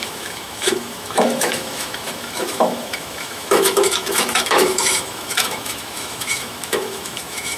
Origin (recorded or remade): remade